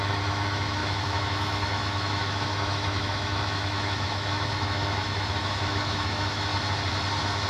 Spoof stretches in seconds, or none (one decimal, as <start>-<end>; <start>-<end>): 0.0-6.5